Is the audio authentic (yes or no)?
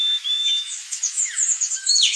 no